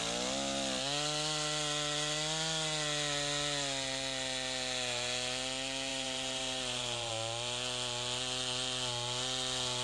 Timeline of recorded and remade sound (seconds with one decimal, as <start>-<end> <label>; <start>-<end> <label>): 0.0-5.9 recorded; 5.9-7.1 remade; 7.1-9.8 recorded